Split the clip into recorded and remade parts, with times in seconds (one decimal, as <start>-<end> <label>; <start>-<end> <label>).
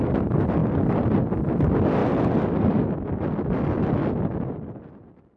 0.0-5.4 recorded